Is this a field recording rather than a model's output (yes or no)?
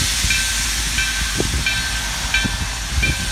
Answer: yes